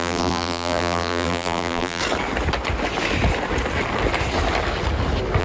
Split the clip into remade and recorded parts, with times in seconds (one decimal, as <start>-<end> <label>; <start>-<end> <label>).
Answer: 0.0-2.0 remade; 2.0-5.4 recorded